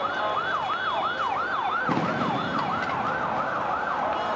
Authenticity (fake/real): real